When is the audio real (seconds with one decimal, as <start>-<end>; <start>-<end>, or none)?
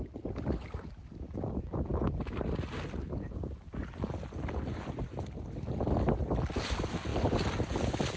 0.0-8.2